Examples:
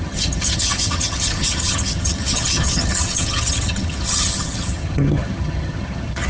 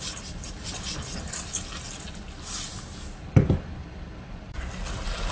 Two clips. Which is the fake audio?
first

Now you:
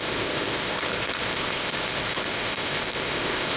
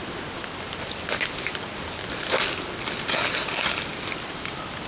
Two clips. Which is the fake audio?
first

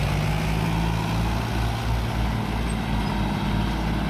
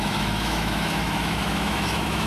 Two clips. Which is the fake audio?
second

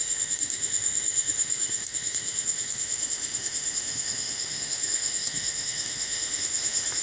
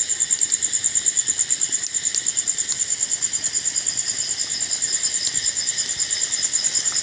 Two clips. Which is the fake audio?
first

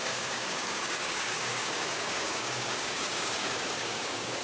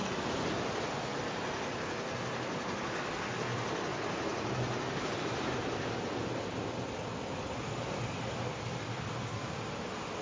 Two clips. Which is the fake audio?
first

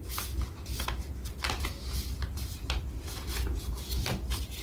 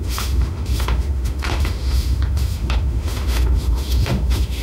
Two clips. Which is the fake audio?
second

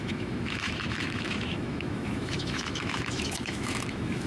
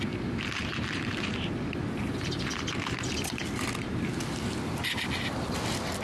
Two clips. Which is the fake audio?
first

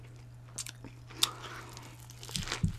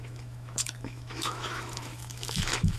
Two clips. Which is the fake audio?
second